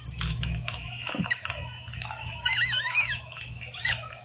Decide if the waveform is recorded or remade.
remade